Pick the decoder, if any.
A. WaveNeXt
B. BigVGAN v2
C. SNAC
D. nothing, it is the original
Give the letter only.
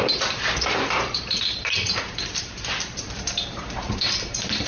B